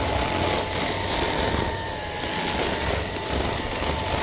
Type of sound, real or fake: real